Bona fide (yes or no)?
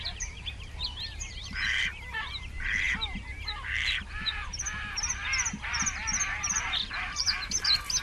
no